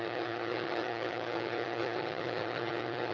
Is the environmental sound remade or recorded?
remade